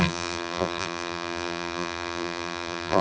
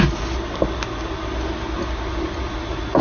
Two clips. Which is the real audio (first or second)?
second